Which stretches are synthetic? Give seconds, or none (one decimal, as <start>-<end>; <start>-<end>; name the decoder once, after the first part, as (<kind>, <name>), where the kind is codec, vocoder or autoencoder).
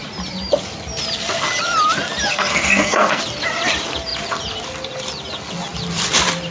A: 2.3-3.2 (codec, SNAC)